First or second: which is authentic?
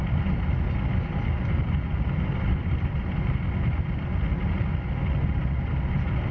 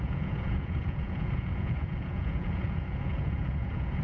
first